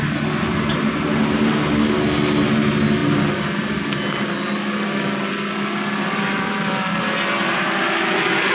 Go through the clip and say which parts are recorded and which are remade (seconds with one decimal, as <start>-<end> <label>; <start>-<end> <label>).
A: 0.0-8.5 recorded